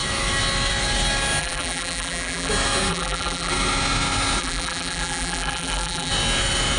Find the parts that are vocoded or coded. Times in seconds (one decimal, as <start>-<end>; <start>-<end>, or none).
1.4-2.5; 2.9-3.5; 4.4-6.1